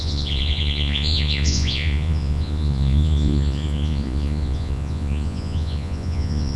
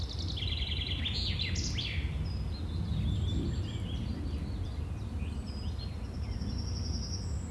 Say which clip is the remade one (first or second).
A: first